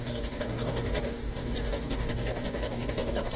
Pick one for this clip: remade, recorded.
remade